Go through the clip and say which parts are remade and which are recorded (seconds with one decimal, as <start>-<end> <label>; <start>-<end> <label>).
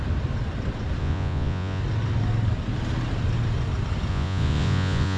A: 0.0-1.0 recorded; 1.0-1.8 remade; 1.8-4.1 recorded; 4.1-5.2 remade